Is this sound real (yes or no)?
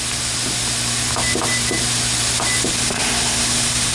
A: yes